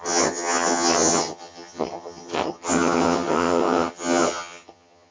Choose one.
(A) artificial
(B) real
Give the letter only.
A